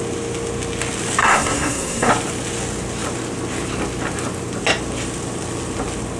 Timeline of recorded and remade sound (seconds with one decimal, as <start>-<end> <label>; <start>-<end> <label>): 0.0-1.2 recorded; 1.2-2.1 remade; 2.1-6.2 recorded